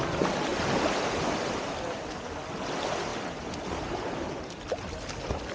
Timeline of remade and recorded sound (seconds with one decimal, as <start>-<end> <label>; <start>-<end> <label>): 0.0-5.5 recorded